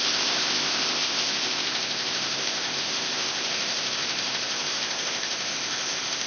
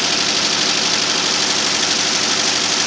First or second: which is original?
second